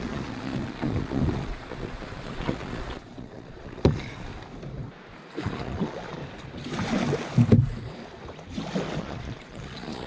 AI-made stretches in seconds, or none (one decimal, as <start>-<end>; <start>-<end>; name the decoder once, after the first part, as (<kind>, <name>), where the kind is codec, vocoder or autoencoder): 0.0-4.3 (vocoder, Vocos); 5.4-6.2; 9.0-10.1